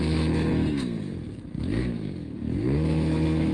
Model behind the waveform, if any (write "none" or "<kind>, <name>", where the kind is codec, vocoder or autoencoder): codec, SNAC